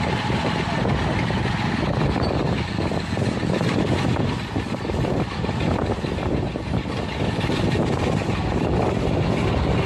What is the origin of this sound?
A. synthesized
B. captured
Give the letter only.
B